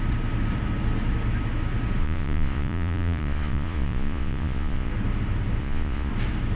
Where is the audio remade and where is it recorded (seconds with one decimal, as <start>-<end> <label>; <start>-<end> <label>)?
0.0-2.0 recorded; 2.0-4.9 remade; 4.9-5.6 recorded; 5.6-6.1 remade; 6.1-6.6 recorded